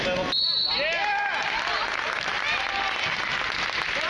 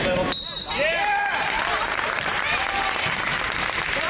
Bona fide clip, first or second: first